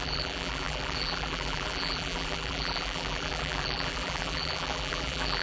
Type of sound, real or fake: fake